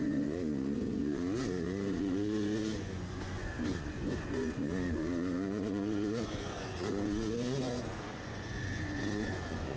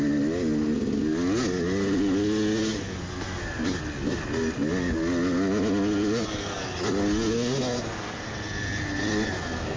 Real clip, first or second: second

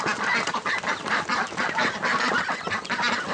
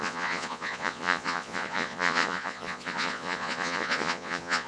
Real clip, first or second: first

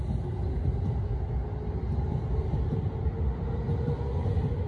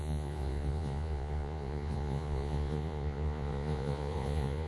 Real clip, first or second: first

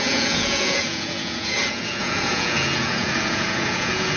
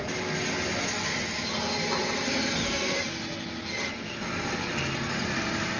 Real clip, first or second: second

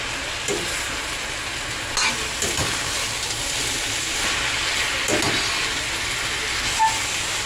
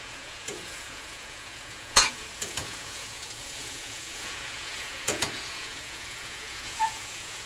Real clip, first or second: first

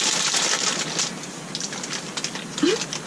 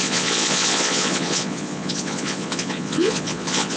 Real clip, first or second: first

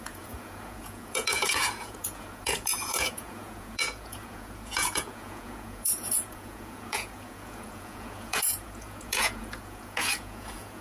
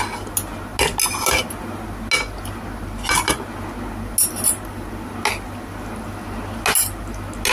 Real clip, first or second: second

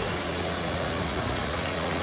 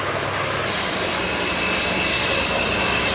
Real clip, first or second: second